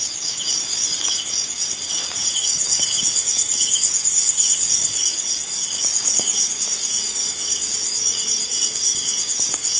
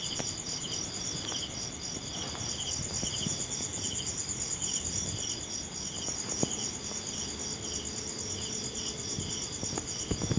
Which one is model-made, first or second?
first